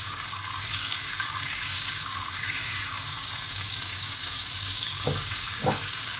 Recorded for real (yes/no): no